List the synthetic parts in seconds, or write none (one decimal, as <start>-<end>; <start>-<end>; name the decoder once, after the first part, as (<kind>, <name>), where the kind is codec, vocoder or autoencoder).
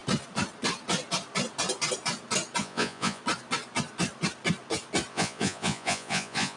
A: 2.6-3.2 (vocoder, Vocos); 5.1-6.6